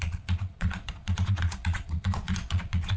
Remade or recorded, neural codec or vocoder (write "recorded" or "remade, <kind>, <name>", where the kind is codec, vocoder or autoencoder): remade, vocoder, Vocos